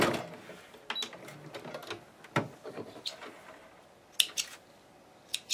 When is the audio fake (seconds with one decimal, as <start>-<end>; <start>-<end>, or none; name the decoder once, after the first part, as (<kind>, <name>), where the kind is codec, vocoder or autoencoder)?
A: none